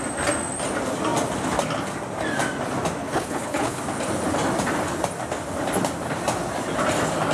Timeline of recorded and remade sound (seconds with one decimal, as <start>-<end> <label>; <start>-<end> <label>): 0.0-3.0 recorded; 3.0-3.8 remade; 3.8-7.3 recorded